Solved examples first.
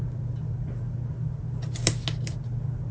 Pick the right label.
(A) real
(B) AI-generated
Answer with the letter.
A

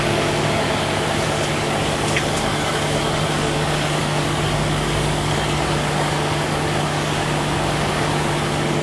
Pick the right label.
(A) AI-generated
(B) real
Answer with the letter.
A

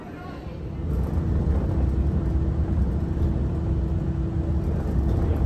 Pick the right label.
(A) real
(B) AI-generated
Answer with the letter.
A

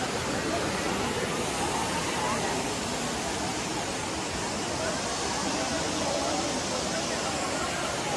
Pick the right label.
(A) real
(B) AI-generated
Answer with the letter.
A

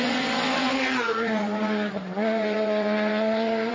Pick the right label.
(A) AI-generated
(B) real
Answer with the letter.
A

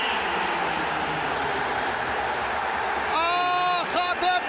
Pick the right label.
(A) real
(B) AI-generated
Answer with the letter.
A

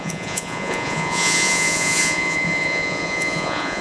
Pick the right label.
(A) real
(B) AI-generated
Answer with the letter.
B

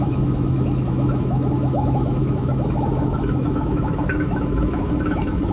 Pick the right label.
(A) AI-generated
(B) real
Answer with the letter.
A